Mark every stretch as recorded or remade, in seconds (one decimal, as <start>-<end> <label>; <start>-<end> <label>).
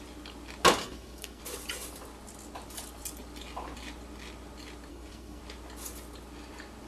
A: 0.0-0.8 recorded; 0.8-1.4 remade; 1.4-4.9 recorded; 4.9-5.4 remade; 5.4-6.9 recorded